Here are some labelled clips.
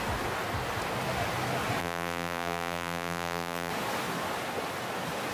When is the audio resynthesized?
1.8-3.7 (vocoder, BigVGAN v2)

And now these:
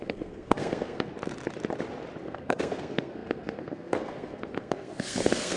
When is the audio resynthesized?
0.0-1.1 (codec, SNAC); 2.2-5.6